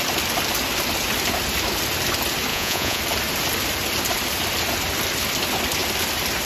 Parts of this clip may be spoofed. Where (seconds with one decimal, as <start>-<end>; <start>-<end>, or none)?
2.5-3.0